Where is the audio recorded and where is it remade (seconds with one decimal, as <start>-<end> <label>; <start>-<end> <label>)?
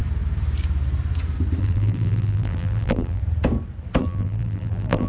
0.0-1.6 recorded; 1.6-3.2 remade; 3.2-4.0 recorded; 4.0-5.1 remade